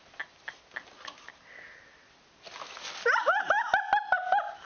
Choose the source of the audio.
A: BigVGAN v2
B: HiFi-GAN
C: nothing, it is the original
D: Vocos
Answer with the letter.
C